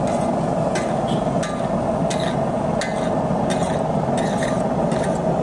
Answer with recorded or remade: recorded